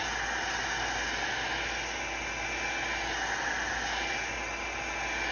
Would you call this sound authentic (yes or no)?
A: yes